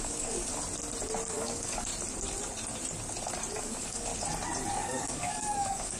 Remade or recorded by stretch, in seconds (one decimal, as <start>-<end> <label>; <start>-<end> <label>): 0.0-0.5 remade; 0.5-1.3 recorded; 1.3-1.9 remade; 1.9-3.6 recorded; 3.6-4.1 remade; 4.1-4.7 recorded; 4.7-6.0 remade